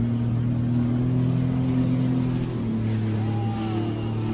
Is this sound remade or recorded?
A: recorded